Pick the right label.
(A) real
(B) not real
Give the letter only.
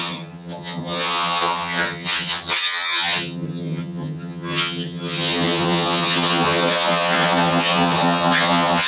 B